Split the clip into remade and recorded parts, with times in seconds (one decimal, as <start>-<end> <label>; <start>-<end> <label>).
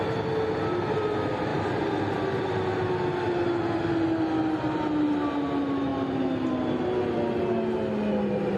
0.0-8.6 recorded